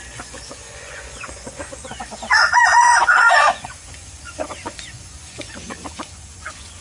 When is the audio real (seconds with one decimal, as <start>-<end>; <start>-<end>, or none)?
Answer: none